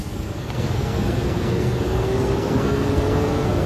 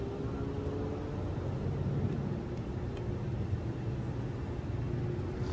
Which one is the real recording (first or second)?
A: second